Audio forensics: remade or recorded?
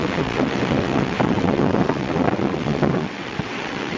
remade